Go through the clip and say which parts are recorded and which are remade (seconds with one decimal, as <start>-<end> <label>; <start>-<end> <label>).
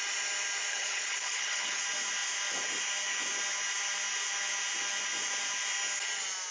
0.0-0.7 recorded; 0.7-1.8 remade; 1.8-6.5 recorded